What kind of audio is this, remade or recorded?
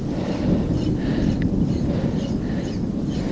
recorded